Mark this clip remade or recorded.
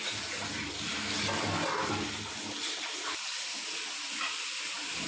recorded